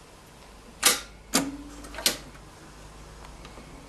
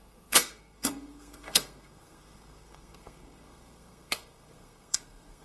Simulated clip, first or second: second